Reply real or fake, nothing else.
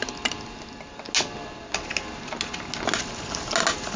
real